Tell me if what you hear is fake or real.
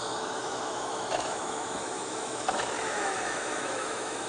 fake